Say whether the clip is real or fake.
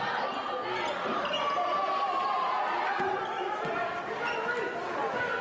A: real